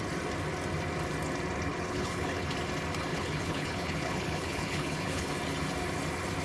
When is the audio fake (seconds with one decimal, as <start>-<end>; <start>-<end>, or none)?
1.7-2.5; 3.1-5.3